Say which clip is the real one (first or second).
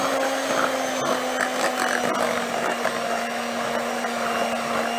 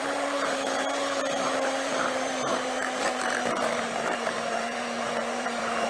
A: first